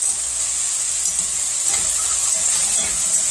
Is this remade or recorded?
recorded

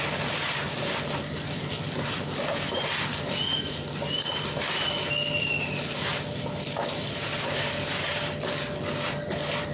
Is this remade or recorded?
recorded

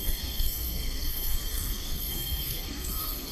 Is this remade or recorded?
remade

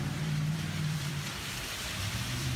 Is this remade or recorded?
remade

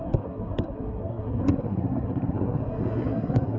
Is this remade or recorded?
remade